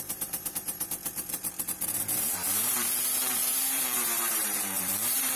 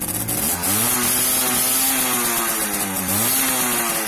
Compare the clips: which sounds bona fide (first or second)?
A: second